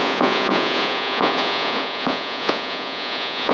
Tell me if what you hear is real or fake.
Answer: fake